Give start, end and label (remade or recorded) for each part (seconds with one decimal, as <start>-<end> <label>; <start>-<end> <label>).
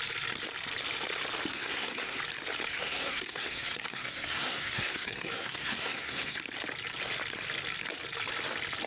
0.0-1.5 recorded; 1.5-2.2 remade; 2.2-2.7 recorded; 2.7-6.4 remade; 6.4-8.9 recorded